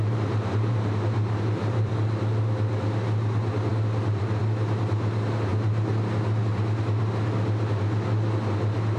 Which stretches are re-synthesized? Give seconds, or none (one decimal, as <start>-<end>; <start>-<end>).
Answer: 0.0-1.9